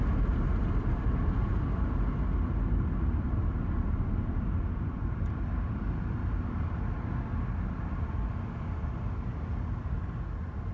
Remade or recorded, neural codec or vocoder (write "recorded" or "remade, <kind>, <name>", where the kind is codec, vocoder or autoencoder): recorded